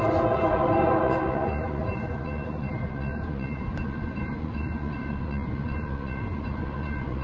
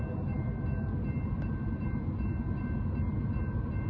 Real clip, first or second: second